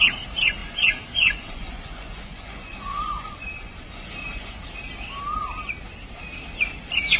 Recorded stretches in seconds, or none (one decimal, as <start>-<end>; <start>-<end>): 0.0-0.6; 4.6-7.2